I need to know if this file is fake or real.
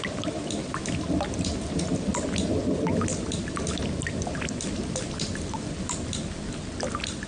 real